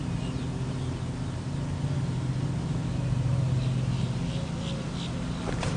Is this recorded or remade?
recorded